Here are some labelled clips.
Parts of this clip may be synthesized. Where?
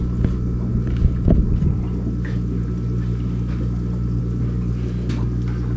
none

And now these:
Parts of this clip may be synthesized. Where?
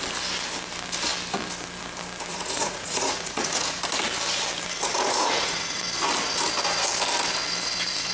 2.3-3.8; 4.9-5.8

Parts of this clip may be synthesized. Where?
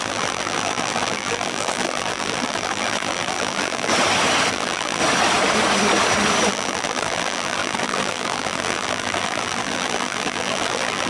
0.0-3.9; 4.5-5.0; 6.5-11.1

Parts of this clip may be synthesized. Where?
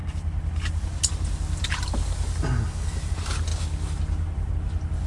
none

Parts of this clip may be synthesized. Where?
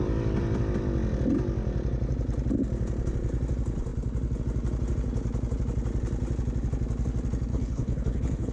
7.5-8.5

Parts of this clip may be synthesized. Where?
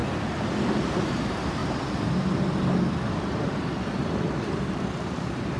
0.8-1.6; 3.1-5.6